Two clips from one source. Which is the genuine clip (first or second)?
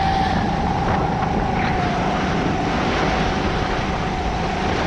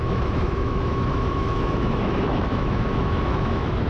first